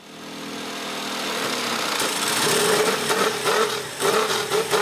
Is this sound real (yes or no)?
yes